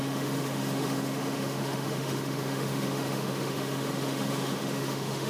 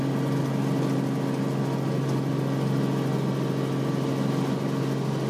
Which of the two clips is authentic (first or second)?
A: second